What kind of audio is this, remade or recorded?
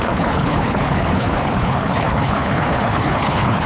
remade